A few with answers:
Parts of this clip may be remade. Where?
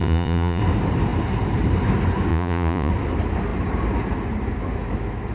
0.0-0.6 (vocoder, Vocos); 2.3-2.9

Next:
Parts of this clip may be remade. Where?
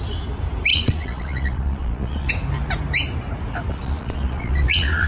0.7-2.3 (vocoder, Vocos); 3.7-5.1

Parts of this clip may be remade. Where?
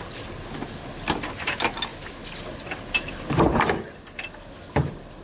none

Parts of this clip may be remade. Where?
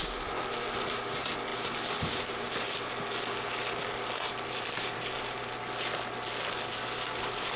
none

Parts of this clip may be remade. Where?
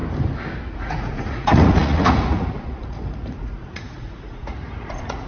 0.7-5.3 (vocoder, Vocos)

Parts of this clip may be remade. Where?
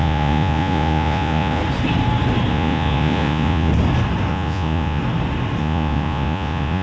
0.0-1.6 (vocoder, Vocos); 2.5-3.7; 4.3-5.0; 5.6-6.8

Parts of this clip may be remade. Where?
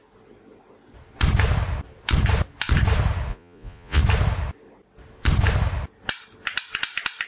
3.3-4.0 (vocoder, Vocos)